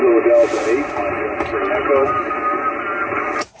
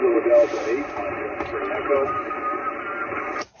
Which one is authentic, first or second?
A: first